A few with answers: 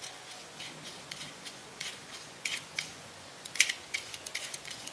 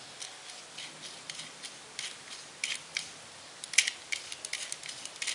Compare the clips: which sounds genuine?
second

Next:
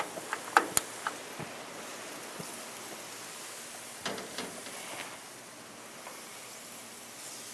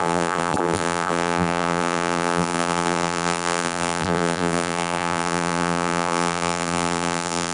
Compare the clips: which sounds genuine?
first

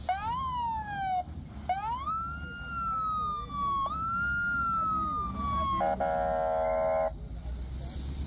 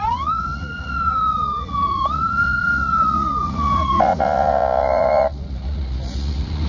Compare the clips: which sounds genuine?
first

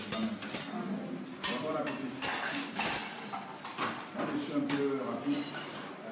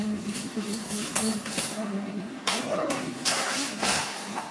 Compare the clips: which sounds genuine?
first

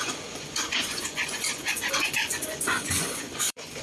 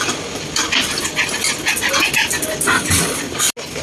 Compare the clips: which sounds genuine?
second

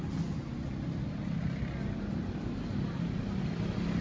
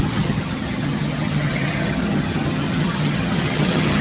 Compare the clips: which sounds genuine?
first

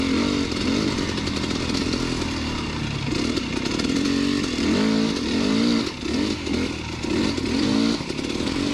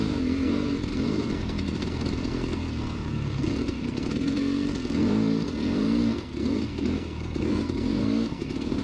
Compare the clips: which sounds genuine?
first